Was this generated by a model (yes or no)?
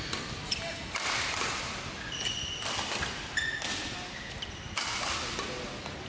no